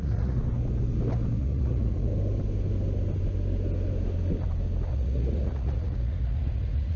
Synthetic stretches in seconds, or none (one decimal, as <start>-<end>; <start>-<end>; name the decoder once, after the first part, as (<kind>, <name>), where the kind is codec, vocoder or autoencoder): 0.0-0.4 (vocoder, Vocos); 1.4-2.1; 4.9-7.0